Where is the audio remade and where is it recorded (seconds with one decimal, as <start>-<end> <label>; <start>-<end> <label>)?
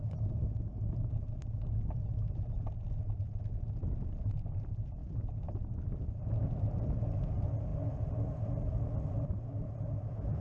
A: 0.0-10.4 recorded